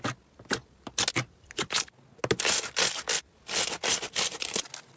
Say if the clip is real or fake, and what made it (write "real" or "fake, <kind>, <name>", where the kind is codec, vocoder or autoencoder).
real